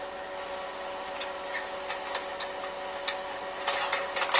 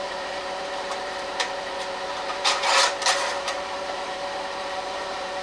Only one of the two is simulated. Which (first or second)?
second